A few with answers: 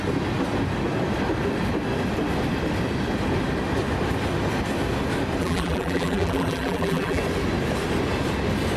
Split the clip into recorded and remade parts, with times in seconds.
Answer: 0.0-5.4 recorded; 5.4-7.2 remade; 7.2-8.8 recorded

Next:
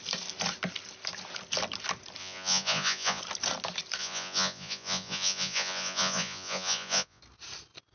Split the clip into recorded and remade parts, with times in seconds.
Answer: 0.0-2.2 recorded; 2.2-3.2 remade; 3.2-4.0 recorded; 4.0-7.2 remade; 7.2-7.9 recorded

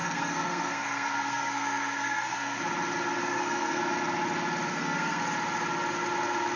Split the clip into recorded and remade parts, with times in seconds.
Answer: 0.0-2.6 remade; 2.6-3.2 recorded; 3.2-3.8 remade; 3.8-4.7 recorded; 4.7-5.2 remade; 5.2-6.6 recorded